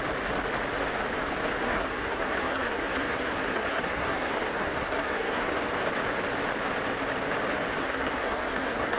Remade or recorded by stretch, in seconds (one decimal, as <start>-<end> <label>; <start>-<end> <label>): 0.0-1.6 recorded; 1.6-5.6 remade; 5.6-7.8 recorded; 7.8-9.0 remade